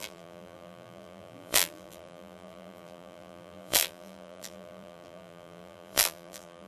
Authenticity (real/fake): fake